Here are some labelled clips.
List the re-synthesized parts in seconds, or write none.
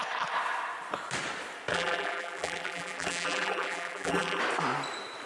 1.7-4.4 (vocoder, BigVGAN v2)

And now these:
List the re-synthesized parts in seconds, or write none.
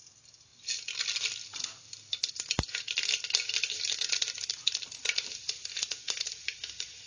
none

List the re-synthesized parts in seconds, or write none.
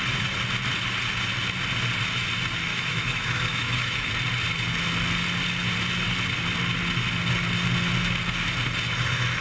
2.7-4.1 (autoencoder, DAC-VAE)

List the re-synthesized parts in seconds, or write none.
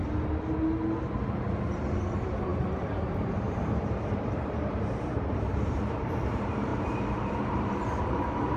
2.1-8.6 (vocoder, BigVGAN v2)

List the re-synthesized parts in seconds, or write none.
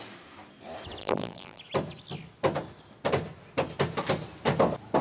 1.0-1.6 (vocoder, BigVGAN v2)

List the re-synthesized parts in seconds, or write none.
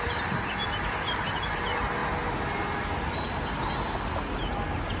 0.0-2.0 (vocoder, BigVGAN v2)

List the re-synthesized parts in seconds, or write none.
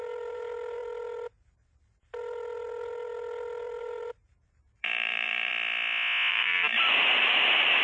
0.0-0.8 (vocoder, BigVGAN v2); 3.8-5.5; 6.3-7.8